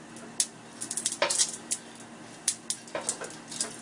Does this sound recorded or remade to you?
recorded